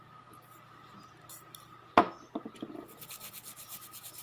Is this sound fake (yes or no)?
no